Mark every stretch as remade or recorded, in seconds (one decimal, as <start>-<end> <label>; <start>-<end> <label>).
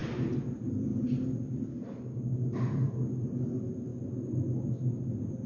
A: 0.0-0.5 recorded; 0.5-0.9 remade; 0.9-2.7 recorded; 2.7-3.9 remade; 3.9-4.6 recorded; 4.6-5.5 remade